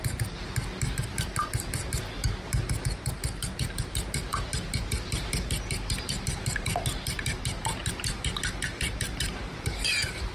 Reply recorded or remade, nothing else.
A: recorded